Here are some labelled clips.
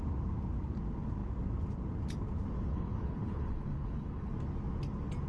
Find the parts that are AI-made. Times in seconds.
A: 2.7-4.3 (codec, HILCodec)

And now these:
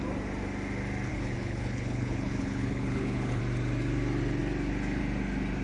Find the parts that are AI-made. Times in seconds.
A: 1.1-3.4 (codec, HILCodec)